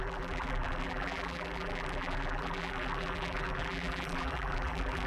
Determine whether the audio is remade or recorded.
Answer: remade